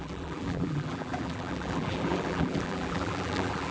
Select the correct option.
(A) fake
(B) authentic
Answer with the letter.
A